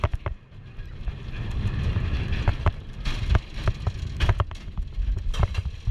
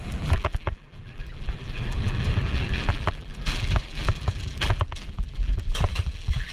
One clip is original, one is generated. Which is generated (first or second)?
second